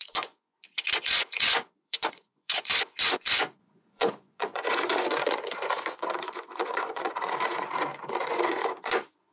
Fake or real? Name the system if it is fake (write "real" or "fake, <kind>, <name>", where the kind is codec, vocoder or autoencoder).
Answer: fake, vocoder, Vocos